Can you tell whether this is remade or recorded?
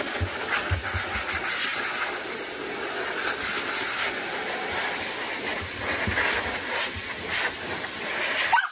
recorded